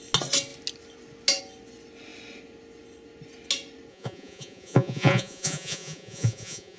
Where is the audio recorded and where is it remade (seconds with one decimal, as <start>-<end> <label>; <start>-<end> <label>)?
0.0-3.9 recorded; 3.9-6.8 remade